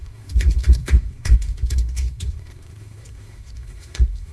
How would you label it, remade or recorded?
remade